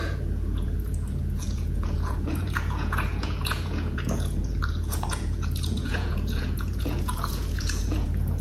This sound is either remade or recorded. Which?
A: remade